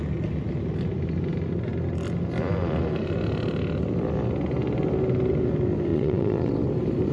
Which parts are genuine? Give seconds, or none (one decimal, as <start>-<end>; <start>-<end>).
0.0-5.9; 6.5-7.1